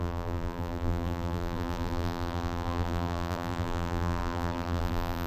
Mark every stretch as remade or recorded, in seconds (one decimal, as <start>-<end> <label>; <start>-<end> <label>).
0.0-5.3 remade